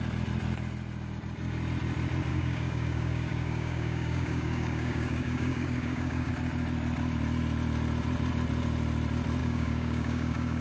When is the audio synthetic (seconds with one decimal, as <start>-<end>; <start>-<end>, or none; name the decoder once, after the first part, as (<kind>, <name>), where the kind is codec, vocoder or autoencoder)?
2.3-6.3 (codec, DAC); 9.4-10.6